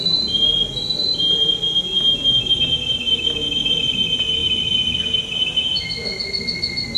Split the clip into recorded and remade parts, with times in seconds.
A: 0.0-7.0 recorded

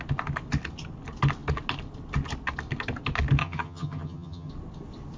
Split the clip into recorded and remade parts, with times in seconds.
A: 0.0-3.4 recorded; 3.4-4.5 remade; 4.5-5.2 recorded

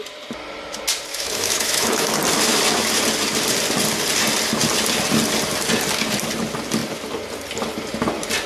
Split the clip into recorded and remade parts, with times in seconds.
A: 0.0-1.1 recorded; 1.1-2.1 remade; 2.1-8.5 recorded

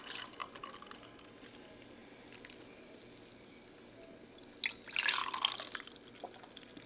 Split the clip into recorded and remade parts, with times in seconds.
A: 0.0-6.9 recorded